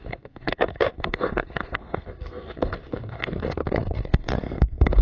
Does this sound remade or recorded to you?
remade